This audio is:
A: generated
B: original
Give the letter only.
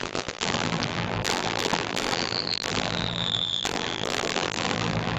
A